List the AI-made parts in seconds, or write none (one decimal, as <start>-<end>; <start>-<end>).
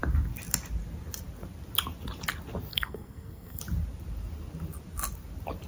2.7-3.6